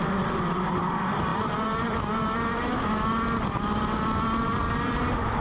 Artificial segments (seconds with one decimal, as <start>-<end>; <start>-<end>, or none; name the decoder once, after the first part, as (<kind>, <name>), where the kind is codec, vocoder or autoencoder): none